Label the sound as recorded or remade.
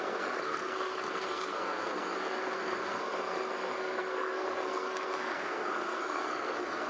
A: remade